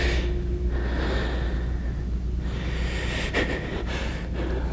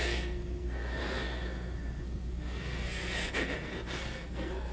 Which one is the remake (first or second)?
second